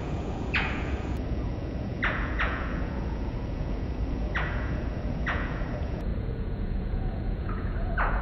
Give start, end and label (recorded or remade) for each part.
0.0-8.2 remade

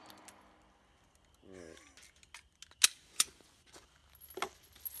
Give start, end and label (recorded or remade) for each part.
0.0-3.0 recorded; 3.0-4.0 remade; 4.0-5.0 recorded

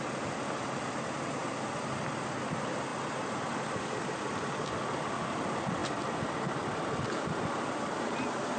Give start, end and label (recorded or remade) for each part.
0.0-8.6 recorded

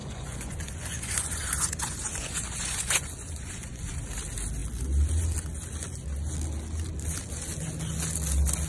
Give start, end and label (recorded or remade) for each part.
0.0-4.0 remade; 4.0-8.7 recorded

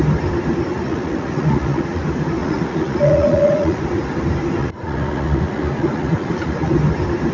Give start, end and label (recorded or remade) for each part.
0.0-0.7 recorded; 0.7-2.0 remade; 2.0-2.4 recorded; 2.4-3.8 remade; 3.8-4.6 recorded; 4.6-6.7 remade; 6.7-7.3 recorded